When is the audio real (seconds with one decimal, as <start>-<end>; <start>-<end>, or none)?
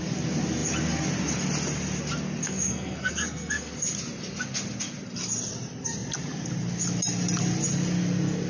0.0-2.4; 3.7-8.5